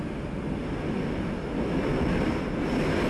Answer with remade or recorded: recorded